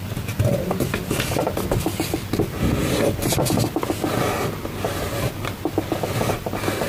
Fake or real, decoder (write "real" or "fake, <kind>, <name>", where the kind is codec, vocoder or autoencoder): real